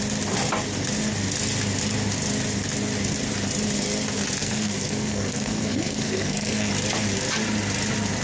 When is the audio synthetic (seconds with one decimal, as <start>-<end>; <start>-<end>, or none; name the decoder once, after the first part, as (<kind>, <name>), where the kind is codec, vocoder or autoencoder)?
4.4-6.7 (codec, SNAC)